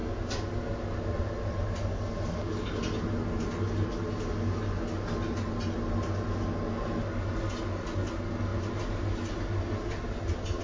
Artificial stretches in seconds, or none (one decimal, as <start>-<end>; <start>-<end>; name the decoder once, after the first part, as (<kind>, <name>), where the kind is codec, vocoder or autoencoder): none